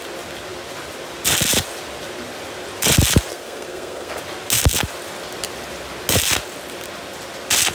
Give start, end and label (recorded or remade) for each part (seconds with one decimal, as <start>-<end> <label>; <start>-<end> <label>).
0.0-3.3 recorded; 3.3-4.2 remade; 4.2-7.7 recorded